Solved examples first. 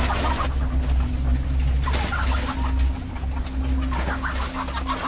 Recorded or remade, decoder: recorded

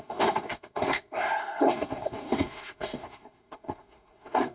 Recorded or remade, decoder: remade, codec, SNAC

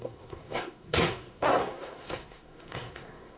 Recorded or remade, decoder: remade, codec, SNAC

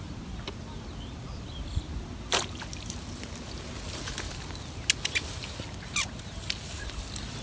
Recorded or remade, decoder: recorded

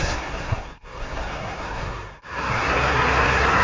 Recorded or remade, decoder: remade, codec, SNAC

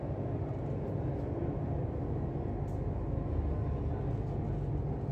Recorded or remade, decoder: recorded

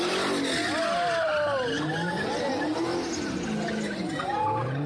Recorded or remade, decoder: recorded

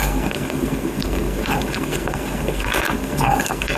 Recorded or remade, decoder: remade, codec, SNAC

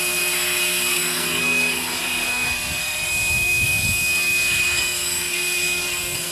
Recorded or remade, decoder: remade, codec, SNAC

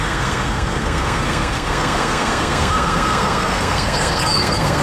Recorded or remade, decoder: remade, codec, SNAC